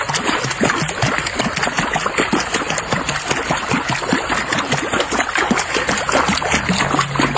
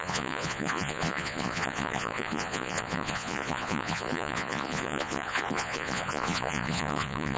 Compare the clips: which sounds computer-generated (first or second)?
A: second